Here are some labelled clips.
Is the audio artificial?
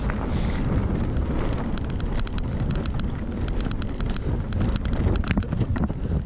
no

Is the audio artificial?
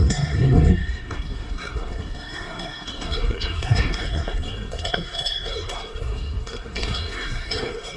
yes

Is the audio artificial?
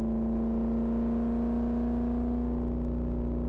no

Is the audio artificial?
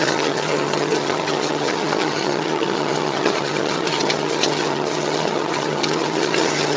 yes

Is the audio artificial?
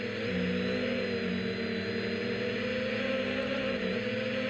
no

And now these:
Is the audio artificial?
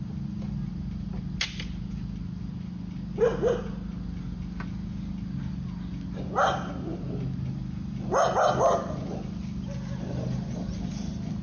no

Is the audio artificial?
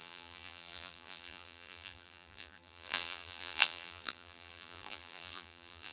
yes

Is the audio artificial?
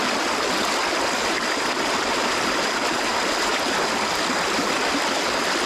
no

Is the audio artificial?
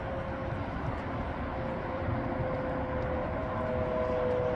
no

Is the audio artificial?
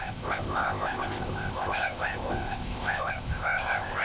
yes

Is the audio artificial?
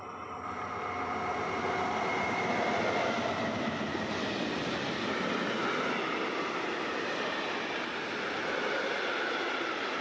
no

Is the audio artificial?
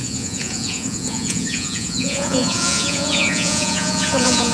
yes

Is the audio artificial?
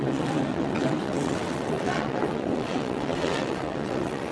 yes